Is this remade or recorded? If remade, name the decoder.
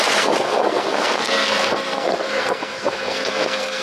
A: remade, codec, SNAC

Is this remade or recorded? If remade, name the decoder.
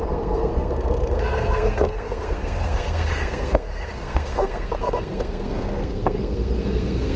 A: remade, codec, SNAC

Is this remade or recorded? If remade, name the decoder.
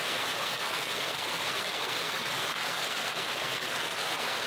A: remade, codec, SNAC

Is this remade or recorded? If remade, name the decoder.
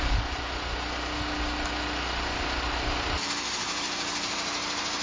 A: recorded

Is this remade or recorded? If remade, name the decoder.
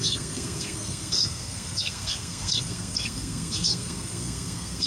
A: remade, codec, SNAC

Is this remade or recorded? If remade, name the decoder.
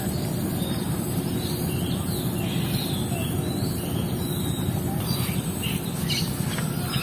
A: recorded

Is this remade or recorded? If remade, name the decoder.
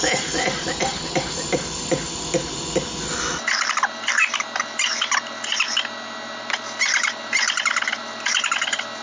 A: recorded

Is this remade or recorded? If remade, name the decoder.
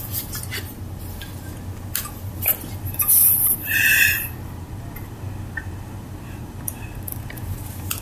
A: recorded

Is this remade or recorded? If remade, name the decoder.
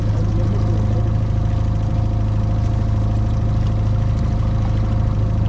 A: recorded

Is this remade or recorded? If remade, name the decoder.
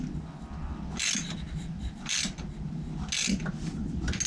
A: recorded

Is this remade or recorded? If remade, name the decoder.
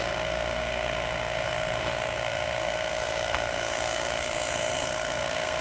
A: remade, codec, SNAC